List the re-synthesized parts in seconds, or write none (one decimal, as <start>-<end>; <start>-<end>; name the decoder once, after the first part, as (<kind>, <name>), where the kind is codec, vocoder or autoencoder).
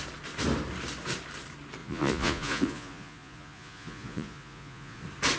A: 1.8-5.0 (vocoder, Vocos)